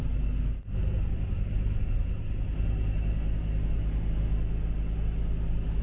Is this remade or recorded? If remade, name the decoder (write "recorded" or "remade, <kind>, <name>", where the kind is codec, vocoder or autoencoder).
recorded